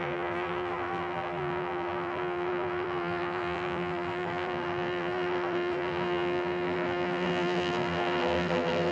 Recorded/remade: remade